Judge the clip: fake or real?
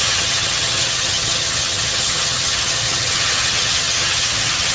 fake